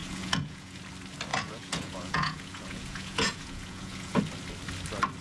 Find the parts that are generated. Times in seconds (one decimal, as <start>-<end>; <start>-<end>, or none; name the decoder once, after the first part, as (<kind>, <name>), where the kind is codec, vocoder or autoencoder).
0.0-0.8 (vocoder, Vocos); 1.3-4.2